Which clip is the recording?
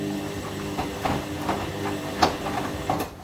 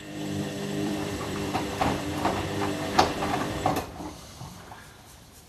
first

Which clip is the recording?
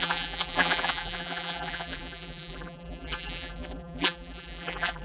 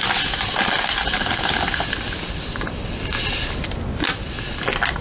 second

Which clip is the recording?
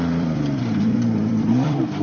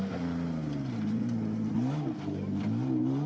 second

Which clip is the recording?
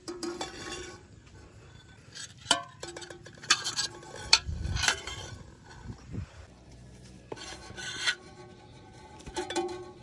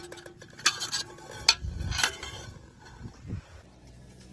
second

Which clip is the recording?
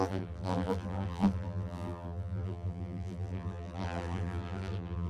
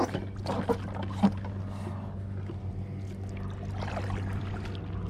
second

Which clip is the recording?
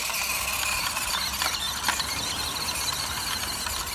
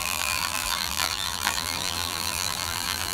first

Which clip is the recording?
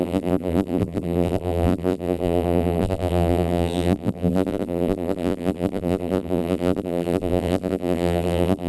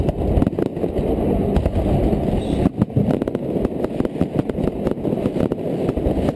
second